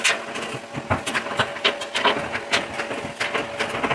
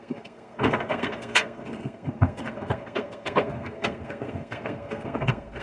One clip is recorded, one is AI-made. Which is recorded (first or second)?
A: first